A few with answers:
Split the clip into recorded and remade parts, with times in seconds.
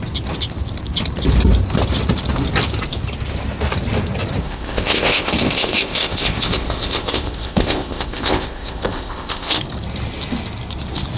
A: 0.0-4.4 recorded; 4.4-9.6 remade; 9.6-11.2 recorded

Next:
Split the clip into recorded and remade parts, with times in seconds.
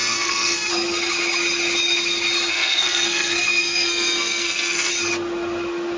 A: 0.0-0.7 remade; 0.7-2.5 recorded; 2.5-4.9 remade; 4.9-6.0 recorded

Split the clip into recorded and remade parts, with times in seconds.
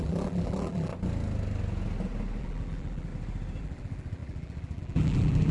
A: 0.0-0.9 remade; 0.9-2.4 recorded; 2.4-3.1 remade; 3.1-3.6 recorded; 3.6-5.5 remade